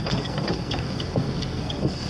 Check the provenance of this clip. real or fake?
fake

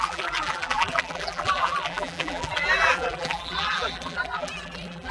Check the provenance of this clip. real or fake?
fake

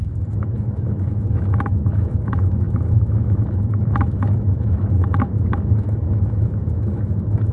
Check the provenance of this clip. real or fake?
fake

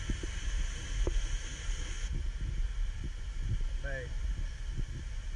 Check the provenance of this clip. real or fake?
real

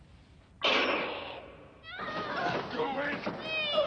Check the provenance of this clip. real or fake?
real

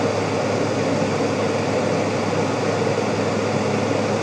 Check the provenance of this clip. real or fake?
real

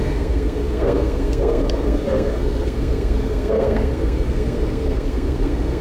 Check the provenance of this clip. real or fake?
fake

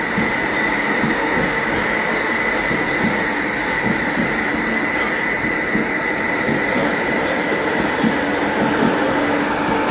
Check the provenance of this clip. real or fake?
real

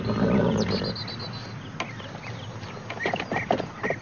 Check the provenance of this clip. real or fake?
real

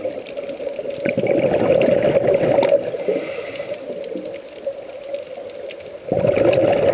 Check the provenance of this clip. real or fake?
real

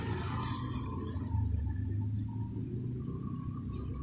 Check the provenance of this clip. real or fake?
real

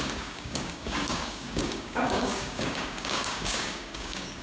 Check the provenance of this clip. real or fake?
fake